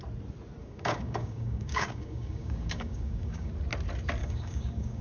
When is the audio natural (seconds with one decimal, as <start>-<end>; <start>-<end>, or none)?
0.0-0.6; 3.5-4.2